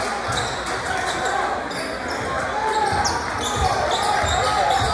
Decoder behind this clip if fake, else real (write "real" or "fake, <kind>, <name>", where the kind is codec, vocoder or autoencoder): real